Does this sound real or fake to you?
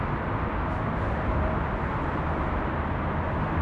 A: real